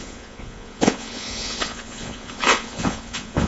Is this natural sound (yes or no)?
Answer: no